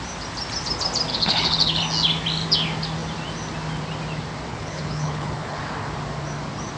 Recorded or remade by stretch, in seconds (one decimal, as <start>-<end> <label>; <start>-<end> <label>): 0.0-1.1 recorded; 1.1-1.8 remade; 1.8-4.5 recorded; 4.5-5.6 remade; 5.6-6.8 recorded